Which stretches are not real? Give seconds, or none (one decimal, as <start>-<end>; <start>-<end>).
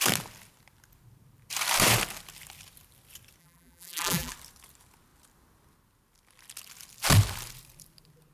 3.4-4.3